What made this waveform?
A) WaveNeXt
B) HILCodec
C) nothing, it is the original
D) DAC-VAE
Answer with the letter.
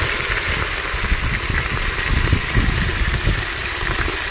C